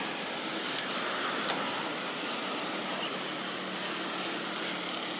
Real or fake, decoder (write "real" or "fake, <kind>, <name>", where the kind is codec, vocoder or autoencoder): real